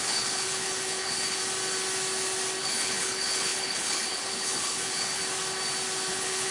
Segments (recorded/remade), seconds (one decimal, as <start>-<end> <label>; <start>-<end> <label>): 0.0-1.4 remade; 1.4-2.6 recorded; 2.6-5.2 remade; 5.2-6.1 recorded; 6.1-6.5 remade

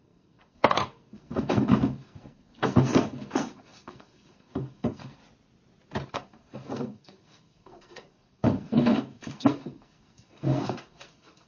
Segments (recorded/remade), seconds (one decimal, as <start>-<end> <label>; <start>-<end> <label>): 0.0-5.2 remade; 5.2-6.1 recorded; 6.1-11.5 remade